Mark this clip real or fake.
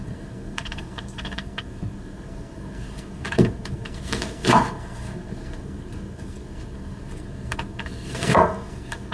fake